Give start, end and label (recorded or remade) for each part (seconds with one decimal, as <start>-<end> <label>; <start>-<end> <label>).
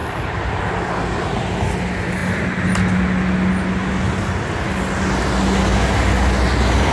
0.0-6.9 recorded